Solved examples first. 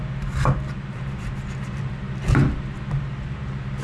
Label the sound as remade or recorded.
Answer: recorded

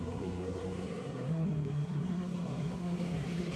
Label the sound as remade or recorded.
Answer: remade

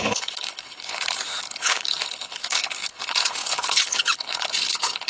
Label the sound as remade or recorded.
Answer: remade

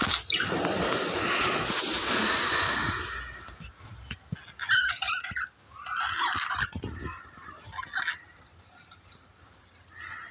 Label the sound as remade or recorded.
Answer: recorded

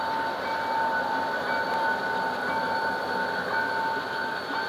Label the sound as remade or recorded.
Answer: recorded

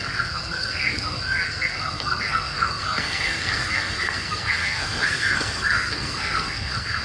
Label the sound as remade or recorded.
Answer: remade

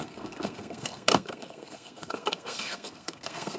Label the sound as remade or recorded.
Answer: remade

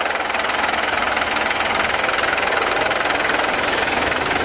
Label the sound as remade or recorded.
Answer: recorded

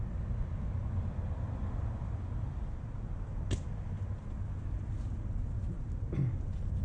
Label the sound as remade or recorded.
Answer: recorded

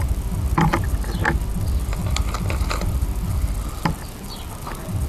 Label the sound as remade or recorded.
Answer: recorded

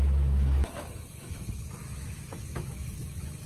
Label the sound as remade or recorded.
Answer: remade